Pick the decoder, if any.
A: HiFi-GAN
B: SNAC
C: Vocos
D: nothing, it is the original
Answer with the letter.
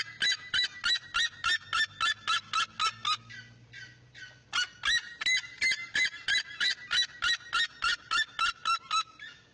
D